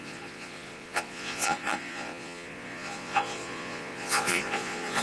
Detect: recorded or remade remade